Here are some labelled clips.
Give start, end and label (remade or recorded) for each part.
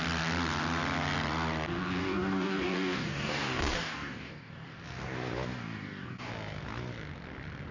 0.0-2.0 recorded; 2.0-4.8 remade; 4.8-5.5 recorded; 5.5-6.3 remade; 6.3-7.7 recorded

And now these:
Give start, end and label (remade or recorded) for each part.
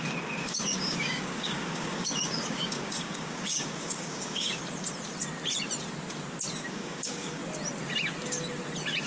0.0-4.6 remade; 4.6-6.7 recorded; 6.7-7.4 remade; 7.4-9.1 recorded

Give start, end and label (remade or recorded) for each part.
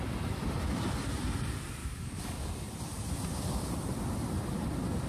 0.0-1.8 recorded; 1.8-2.5 remade; 2.5-5.1 recorded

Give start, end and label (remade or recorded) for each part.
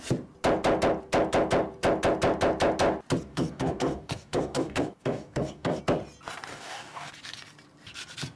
0.0-3.3 recorded; 3.3-5.8 remade; 5.8-6.5 recorded; 6.5-7.1 remade; 7.1-8.4 recorded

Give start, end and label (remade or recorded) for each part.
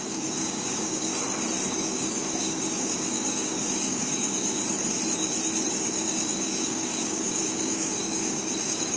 0.0-1.1 remade; 1.1-1.7 recorded; 1.7-4.6 remade; 4.6-5.7 recorded; 5.7-9.0 remade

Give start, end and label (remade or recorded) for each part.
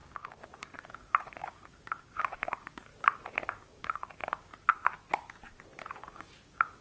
0.0-2.9 remade; 2.9-3.5 recorded; 3.5-4.5 remade; 4.5-6.0 recorded; 6.0-6.8 remade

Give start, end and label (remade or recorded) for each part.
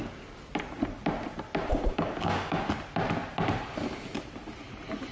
0.0-1.7 recorded; 1.7-2.7 remade; 2.7-5.1 recorded